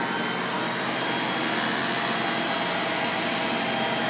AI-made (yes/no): no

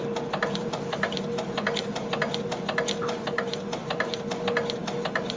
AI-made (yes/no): no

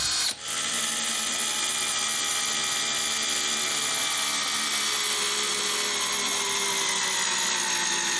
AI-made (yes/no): no